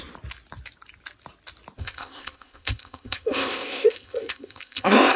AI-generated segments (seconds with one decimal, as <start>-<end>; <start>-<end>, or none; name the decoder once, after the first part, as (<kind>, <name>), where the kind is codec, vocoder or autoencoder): 1.8-5.2 (codec, ZipCodec)